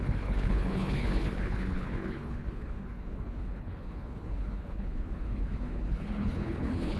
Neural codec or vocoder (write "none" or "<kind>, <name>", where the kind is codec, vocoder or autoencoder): codec, HILCodec